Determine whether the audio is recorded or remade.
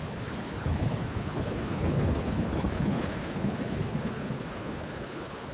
remade